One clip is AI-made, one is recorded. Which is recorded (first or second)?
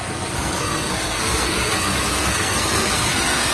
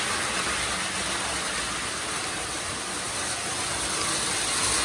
second